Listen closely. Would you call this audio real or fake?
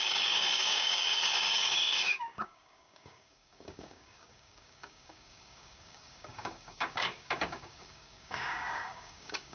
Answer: fake